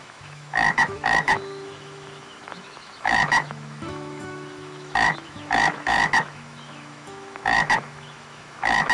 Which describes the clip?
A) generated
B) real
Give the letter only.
A